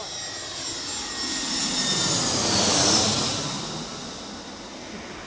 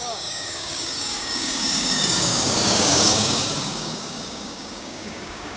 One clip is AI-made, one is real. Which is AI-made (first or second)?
second